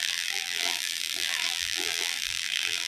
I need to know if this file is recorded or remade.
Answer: remade